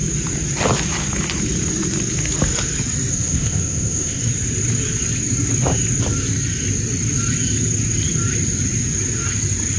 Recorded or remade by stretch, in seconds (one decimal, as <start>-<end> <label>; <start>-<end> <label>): 0.0-3.1 recorded; 3.1-4.2 remade; 4.2-9.8 recorded